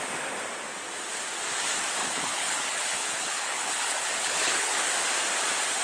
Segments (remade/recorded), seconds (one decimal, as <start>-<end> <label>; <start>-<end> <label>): 0.0-2.0 recorded; 2.0-4.8 remade; 4.8-5.8 recorded